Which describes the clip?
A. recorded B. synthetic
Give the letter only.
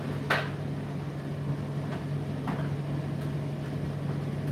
A